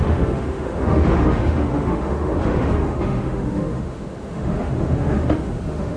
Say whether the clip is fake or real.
fake